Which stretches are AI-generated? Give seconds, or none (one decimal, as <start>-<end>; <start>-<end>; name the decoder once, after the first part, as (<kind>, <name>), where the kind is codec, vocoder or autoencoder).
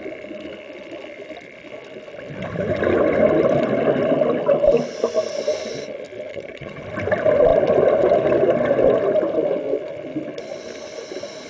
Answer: 6.3-6.8 (vocoder, HiFi-GAN)